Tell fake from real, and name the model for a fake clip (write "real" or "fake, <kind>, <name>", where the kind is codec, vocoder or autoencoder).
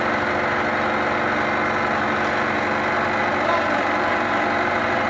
real